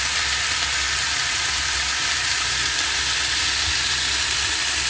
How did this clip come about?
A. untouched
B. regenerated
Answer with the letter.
B